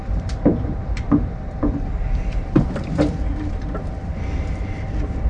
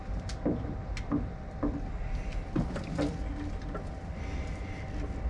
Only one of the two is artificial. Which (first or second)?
first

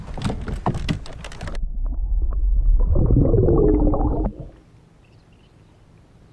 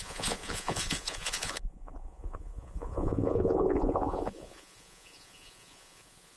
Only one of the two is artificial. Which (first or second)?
second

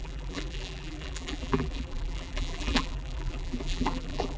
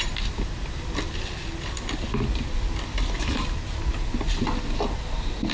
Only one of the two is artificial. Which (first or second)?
first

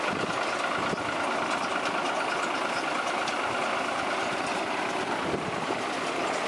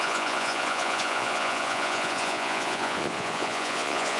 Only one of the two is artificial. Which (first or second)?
second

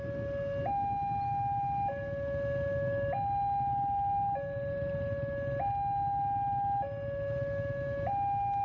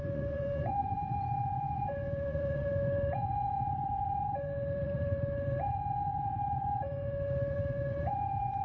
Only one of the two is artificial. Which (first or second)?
second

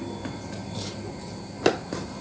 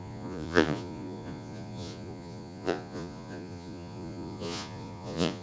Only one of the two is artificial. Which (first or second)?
second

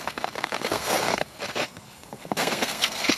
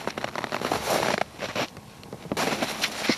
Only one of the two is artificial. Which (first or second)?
first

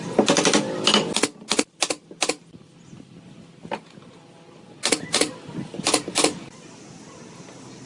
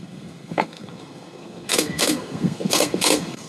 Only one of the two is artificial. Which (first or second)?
second